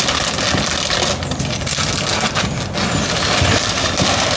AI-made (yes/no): no